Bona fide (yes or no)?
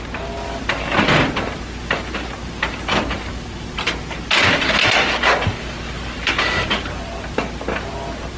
yes